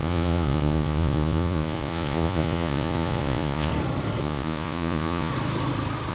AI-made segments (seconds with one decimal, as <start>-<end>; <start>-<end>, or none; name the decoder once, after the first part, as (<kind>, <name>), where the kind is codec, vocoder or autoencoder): 0.0-3.7 (vocoder, Vocos); 4.2-5.3